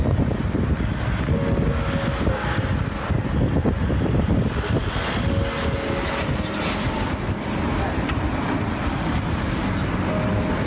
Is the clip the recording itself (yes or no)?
yes